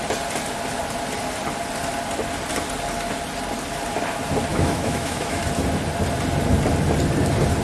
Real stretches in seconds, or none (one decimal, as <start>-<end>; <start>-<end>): 0.0-4.5; 5.4-7.6